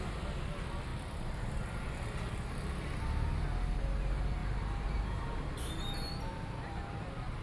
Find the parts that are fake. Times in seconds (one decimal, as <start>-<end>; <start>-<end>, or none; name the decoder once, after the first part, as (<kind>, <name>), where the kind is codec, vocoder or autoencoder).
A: none